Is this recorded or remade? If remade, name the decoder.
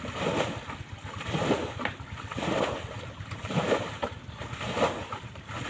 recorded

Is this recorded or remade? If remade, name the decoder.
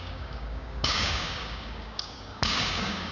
remade, codec, DAC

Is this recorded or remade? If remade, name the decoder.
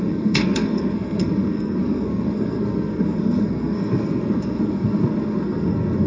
remade, codec, SNAC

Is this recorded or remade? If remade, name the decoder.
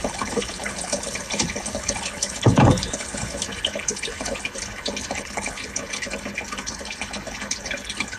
remade, codec, HILCodec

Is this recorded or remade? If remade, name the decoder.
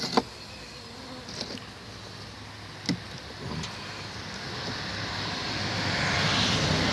recorded